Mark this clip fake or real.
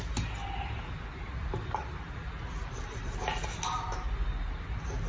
real